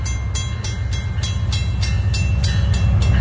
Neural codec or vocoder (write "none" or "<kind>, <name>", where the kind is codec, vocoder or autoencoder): none